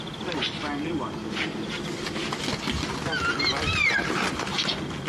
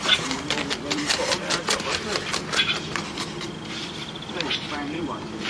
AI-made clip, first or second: second